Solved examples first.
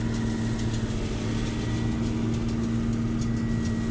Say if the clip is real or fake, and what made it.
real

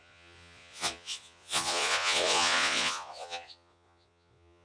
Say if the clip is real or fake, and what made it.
fake, vocoder, Vocos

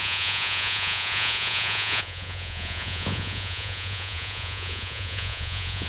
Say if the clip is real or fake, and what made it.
fake, vocoder, Vocos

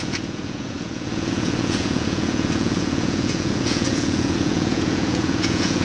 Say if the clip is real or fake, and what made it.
fake, vocoder, Vocos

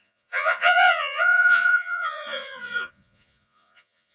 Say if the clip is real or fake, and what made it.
fake, vocoder, Vocos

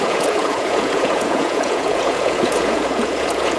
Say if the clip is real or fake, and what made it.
fake, vocoder, Vocos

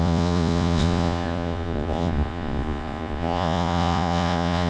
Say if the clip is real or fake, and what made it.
fake, vocoder, Vocos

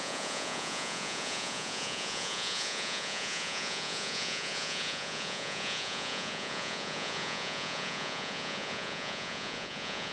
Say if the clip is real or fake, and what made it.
fake, vocoder, Vocos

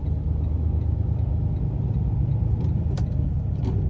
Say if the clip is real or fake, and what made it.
real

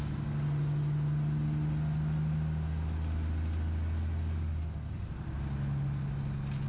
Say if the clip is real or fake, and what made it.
real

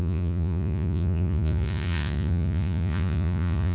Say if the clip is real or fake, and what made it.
fake, vocoder, Vocos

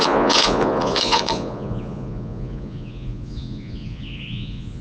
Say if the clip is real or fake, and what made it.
fake, vocoder, Vocos